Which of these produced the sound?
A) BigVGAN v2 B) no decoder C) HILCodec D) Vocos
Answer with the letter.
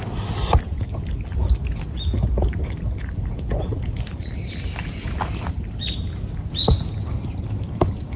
B